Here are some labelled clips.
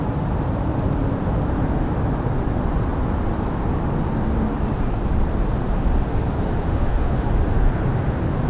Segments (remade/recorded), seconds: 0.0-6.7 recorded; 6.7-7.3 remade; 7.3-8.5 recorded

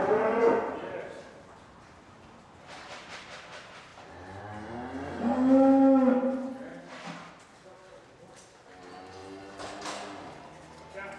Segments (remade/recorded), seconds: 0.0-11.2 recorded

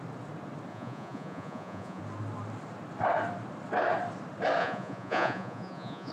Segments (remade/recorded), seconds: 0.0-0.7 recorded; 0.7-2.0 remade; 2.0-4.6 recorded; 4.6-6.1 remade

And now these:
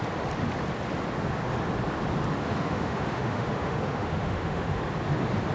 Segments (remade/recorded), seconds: 0.0-2.4 recorded; 2.4-4.8 remade; 4.8-5.5 recorded

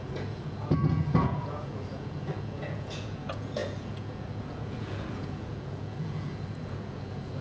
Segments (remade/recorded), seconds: 0.0-7.4 remade